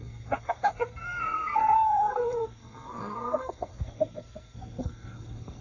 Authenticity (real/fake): fake